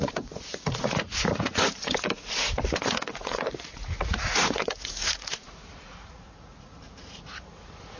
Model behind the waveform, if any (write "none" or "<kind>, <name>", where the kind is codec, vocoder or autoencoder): vocoder, Vocos